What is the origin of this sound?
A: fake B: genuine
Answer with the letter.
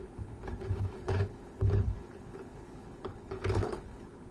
A